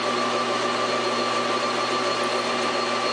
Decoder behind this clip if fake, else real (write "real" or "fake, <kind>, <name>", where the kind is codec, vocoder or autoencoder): real